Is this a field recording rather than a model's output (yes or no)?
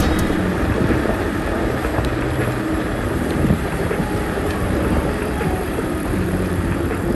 no